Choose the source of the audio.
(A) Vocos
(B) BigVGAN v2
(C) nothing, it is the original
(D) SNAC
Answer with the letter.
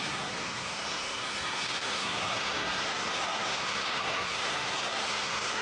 D